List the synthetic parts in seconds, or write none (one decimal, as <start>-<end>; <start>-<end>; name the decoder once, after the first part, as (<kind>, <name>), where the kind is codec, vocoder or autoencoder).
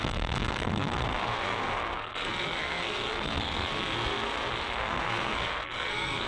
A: 0.0-6.3 (codec, SNAC)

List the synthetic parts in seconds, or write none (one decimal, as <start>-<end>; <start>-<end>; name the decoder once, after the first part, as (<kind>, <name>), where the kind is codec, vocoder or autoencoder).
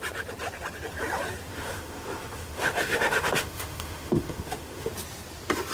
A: 1.5-4.9 (autoencoder, DAC-VAE)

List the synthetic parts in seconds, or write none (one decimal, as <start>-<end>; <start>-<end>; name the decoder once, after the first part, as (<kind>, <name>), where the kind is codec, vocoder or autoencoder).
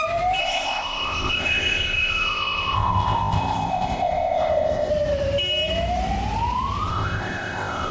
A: 0.4-4.9 (codec, ZipCodec); 6.9-7.9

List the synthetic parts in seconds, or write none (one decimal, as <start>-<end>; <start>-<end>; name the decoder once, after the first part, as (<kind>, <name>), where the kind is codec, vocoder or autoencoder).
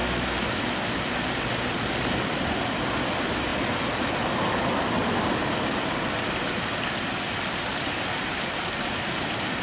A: none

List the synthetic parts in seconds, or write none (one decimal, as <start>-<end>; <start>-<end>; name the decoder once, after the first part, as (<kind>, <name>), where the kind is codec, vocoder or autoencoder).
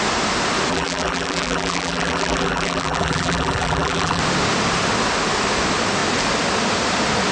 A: 0.7-4.2 (vocoder, BigVGAN v2)